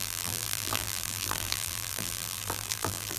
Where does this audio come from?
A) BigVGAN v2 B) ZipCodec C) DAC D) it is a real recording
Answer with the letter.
A